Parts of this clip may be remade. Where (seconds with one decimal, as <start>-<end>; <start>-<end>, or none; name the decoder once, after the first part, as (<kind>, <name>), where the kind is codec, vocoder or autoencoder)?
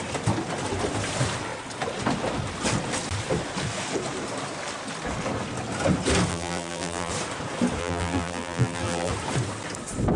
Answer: 6.3-7.1 (vocoder, BigVGAN v2); 7.8-9.1